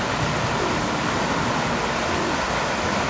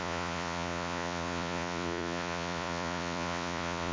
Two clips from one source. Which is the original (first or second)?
first